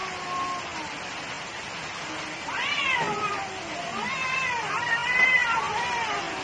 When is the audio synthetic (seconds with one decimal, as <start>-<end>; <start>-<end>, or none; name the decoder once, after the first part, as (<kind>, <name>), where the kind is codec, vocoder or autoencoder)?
none